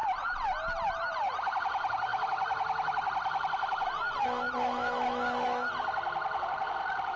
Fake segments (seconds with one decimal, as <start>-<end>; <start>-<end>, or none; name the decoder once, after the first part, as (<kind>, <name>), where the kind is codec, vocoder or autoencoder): 0.9-2.1 (vocoder, BigVGAN v2); 6.4-7.2